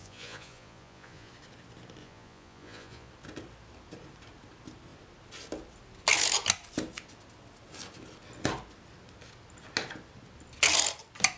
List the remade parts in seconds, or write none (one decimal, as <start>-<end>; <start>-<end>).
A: 0.0-1.3; 2.0-3.1